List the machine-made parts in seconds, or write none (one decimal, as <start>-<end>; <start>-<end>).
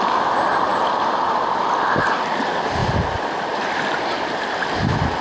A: none